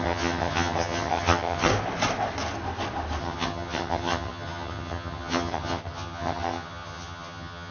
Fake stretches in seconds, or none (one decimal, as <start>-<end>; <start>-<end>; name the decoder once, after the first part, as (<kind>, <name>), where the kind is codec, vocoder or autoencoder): 0.0-1.7 (vocoder, HiFi-GAN); 3.2-7.7